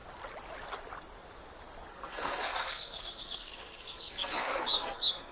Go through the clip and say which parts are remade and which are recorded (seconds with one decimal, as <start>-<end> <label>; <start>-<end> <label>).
0.0-1.9 recorded; 1.9-5.3 remade

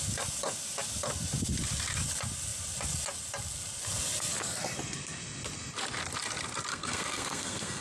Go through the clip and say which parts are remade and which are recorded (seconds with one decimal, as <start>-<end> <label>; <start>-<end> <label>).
0.0-6.7 recorded; 6.7-7.8 remade

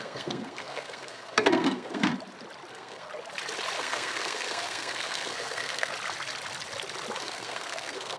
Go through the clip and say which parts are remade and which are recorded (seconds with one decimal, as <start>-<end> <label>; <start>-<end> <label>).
0.0-2.1 remade; 2.1-2.7 recorded; 2.7-3.1 remade; 3.1-3.8 recorded; 3.8-5.9 remade; 5.9-7.2 recorded; 7.2-8.2 remade